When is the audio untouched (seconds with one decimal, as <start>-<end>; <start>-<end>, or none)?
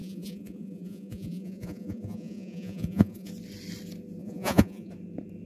3.3-4.2; 4.9-5.5